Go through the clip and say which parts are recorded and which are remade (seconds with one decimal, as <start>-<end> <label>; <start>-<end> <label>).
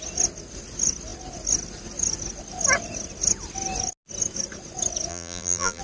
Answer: 0.0-5.1 recorded; 5.1-5.8 remade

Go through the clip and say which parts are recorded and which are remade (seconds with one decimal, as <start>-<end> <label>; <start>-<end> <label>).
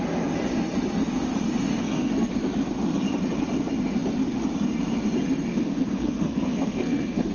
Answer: 0.0-1.7 recorded; 1.7-2.3 remade; 2.3-5.5 recorded; 5.5-7.3 remade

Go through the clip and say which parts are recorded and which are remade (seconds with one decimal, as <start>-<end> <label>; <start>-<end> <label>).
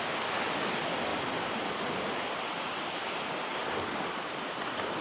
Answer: 0.0-5.0 recorded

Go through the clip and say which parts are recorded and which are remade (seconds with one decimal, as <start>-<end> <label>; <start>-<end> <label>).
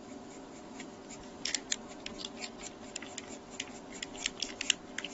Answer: 0.0-5.1 recorded